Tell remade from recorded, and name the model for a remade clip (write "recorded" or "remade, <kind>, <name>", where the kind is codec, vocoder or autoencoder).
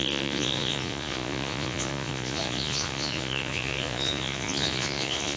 remade, vocoder, Vocos